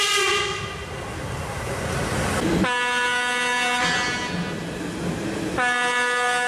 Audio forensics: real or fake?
real